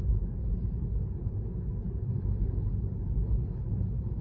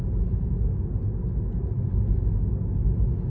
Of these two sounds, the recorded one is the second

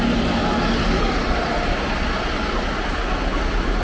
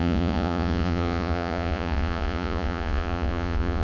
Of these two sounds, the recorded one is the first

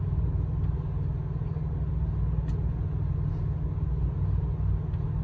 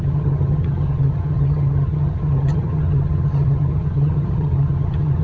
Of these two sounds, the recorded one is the first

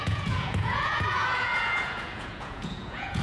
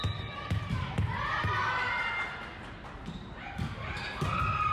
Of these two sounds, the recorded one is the second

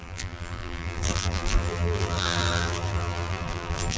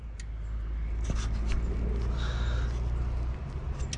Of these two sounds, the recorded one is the second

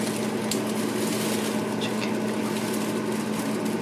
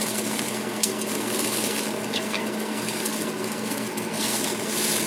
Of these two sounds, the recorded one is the first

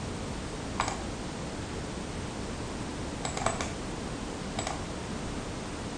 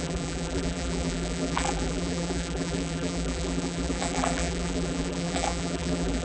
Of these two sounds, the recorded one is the first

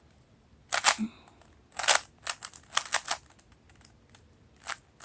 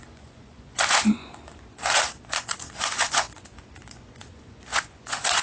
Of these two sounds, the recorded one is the first